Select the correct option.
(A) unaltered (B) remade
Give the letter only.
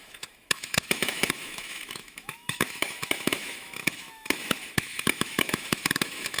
B